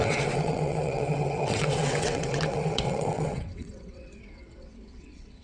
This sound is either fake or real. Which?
fake